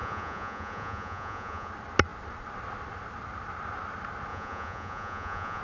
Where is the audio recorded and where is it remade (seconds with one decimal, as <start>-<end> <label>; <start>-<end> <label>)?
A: 0.0-1.7 remade; 1.7-4.3 recorded; 4.3-5.6 remade